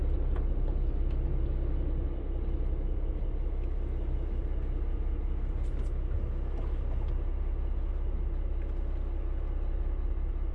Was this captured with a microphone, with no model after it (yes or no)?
yes